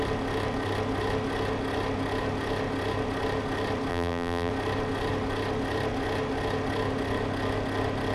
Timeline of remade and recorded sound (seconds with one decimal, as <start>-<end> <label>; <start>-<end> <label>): 0.0-3.9 recorded; 3.9-4.5 remade; 4.5-8.1 recorded